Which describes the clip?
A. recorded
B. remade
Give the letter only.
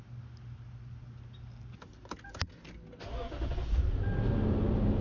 A